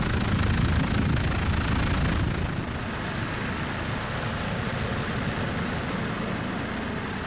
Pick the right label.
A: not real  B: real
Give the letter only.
B